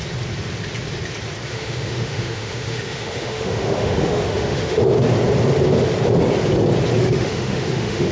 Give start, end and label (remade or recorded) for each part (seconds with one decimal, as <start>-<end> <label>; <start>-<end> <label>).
0.0-1.5 recorded; 1.5-4.8 remade; 4.8-7.0 recorded; 7.0-8.1 remade